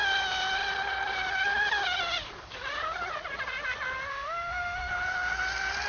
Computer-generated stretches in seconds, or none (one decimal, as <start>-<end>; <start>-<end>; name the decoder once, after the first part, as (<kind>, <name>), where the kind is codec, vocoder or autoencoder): 4.1-4.9 (autoencoder, DAC-VAE)